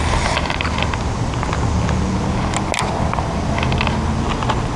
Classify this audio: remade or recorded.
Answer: recorded